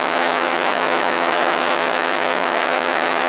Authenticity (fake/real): fake